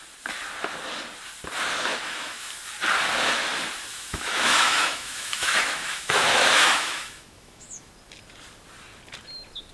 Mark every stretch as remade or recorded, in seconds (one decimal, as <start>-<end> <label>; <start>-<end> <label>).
0.0-1.9 recorded; 1.9-2.5 remade; 2.5-3.9 recorded; 3.9-7.9 remade; 7.9-9.7 recorded